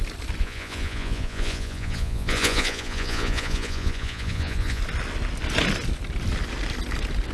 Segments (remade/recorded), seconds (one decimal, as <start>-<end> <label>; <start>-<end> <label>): 0.0-0.4 recorded; 0.4-4.8 remade; 4.8-7.3 recorded